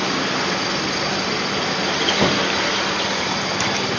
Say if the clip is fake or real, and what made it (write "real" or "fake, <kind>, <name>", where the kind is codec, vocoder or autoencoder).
real